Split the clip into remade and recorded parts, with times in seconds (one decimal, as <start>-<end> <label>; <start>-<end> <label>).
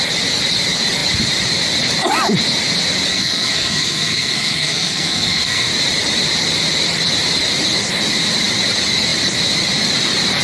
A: 0.0-3.1 recorded; 3.1-5.7 remade; 5.7-10.4 recorded